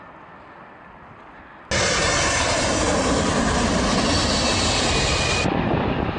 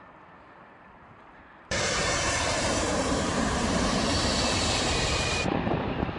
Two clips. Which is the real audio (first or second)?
first